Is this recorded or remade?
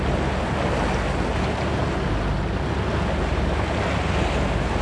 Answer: recorded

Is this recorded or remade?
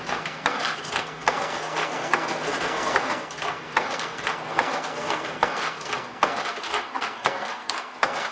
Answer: remade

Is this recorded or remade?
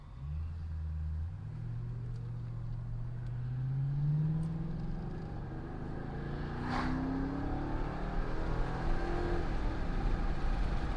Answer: recorded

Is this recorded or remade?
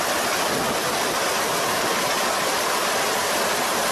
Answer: recorded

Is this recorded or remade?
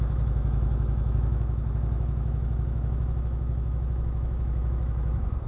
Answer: remade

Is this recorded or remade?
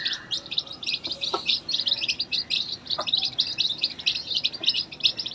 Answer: remade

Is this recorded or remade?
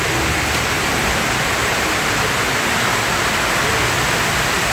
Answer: remade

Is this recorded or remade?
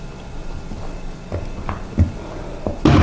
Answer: recorded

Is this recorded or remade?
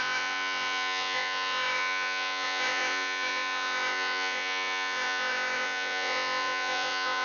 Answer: remade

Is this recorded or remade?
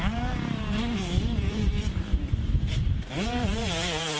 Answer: remade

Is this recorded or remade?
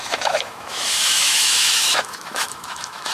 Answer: remade